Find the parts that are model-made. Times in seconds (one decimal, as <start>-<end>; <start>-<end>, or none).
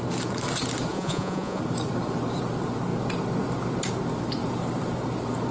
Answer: 0.9-1.6